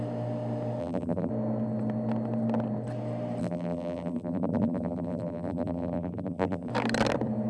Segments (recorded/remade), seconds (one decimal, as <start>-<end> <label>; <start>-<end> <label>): 0.0-0.8 recorded; 0.8-1.3 remade; 1.3-3.4 recorded; 3.4-6.7 remade; 6.7-7.5 recorded